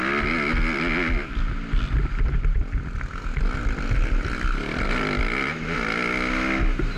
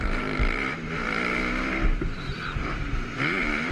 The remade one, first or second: second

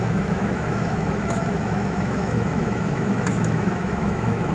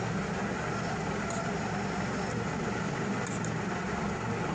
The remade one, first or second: first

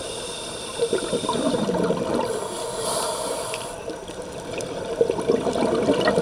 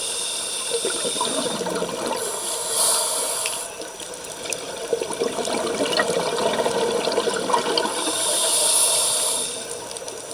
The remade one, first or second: first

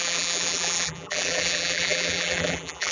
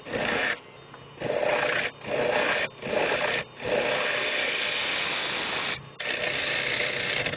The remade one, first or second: first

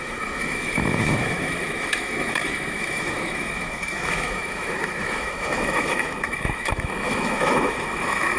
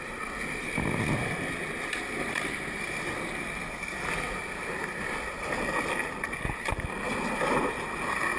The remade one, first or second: first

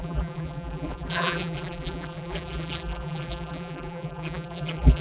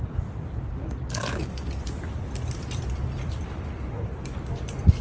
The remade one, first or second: first